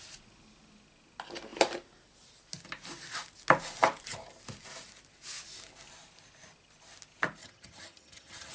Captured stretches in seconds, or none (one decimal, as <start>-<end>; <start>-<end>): 0.0-7.4